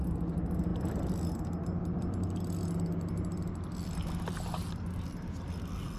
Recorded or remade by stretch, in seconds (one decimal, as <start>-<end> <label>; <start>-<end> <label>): 0.0-6.0 recorded